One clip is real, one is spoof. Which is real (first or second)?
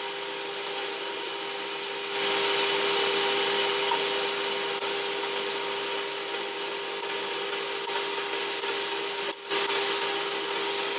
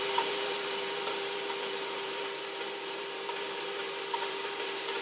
first